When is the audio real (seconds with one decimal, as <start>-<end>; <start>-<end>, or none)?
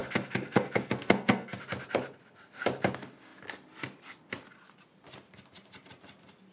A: 1.6-6.5